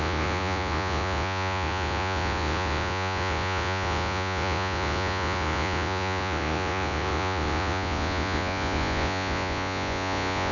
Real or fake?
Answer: fake